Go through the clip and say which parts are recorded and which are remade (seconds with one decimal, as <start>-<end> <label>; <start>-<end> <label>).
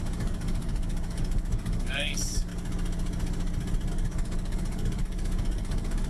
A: 0.0-2.5 remade; 2.5-3.9 recorded; 3.9-6.1 remade